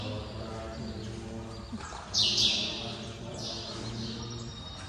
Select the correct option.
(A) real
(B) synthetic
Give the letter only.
A